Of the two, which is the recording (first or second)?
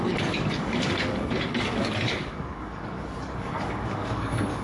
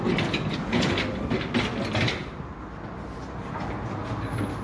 second